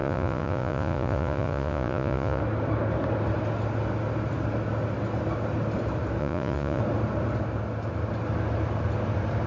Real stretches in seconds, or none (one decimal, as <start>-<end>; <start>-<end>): 2.4-6.2; 6.8-9.5